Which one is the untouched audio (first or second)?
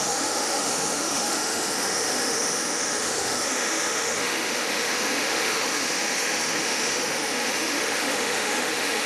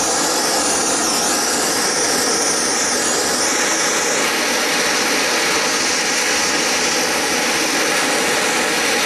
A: second